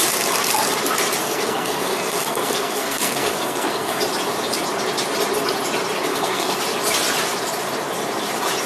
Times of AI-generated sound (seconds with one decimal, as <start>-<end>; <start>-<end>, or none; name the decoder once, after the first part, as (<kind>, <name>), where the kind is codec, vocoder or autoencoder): 1.2-4.0 (codec, SNAC); 6.1-6.6